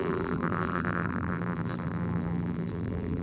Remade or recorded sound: remade